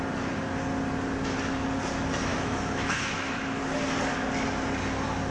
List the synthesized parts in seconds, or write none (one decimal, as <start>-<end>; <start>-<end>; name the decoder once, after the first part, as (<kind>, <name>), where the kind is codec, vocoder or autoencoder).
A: 2.3-3.6 (autoencoder, DAC-VAE)